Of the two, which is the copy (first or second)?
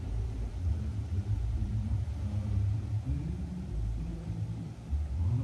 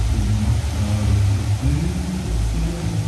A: first